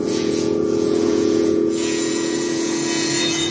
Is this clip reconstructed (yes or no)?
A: yes